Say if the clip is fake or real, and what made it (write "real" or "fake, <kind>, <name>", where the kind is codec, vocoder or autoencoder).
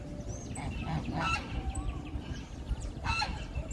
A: fake, vocoder, BigVGAN v2